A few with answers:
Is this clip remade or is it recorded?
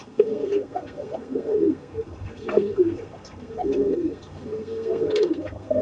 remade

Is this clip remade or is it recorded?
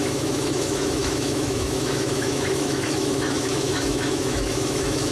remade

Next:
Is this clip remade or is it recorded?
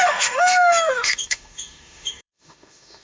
remade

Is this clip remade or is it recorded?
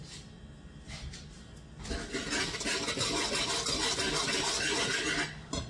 recorded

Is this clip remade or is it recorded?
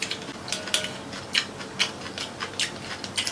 recorded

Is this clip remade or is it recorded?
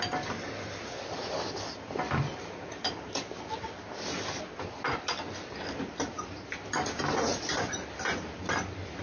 recorded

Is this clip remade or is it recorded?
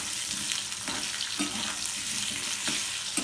recorded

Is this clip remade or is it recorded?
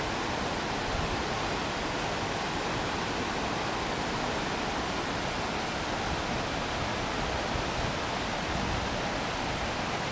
recorded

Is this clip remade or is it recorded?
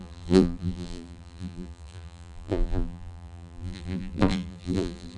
remade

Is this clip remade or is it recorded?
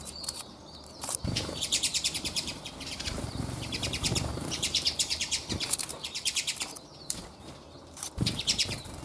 remade